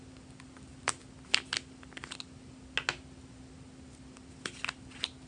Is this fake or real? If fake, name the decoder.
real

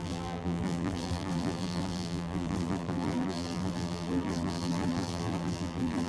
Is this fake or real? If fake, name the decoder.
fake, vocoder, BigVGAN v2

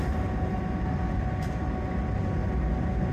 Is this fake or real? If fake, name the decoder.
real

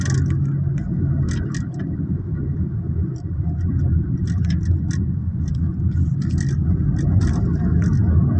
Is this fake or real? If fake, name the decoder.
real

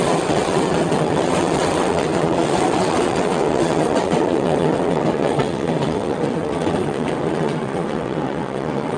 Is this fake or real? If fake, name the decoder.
fake, vocoder, WaveNeXt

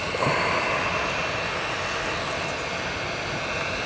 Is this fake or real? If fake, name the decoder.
real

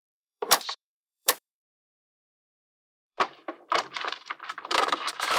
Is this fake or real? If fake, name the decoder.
fake, vocoder, BigVGAN v2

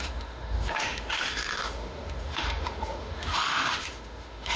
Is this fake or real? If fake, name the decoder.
fake, autoencoder, DAC-VAE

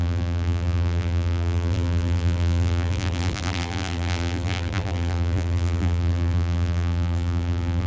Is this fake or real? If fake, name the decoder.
fake, vocoder, BigVGAN v2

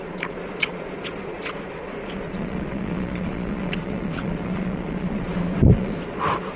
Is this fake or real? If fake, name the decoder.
fake, vocoder, Vocos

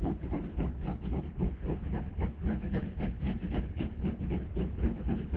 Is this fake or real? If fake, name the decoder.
fake, codec, HILCodec